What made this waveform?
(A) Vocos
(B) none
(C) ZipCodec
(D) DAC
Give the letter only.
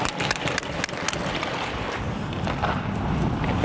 B